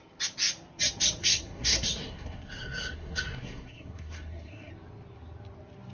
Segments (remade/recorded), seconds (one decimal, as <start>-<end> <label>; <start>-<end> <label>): 0.0-1.2 recorded; 1.2-4.7 remade; 4.7-5.9 recorded